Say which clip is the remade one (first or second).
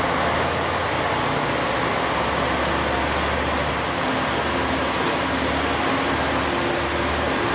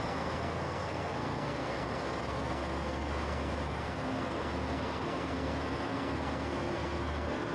second